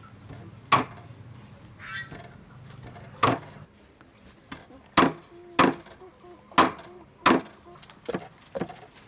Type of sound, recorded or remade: recorded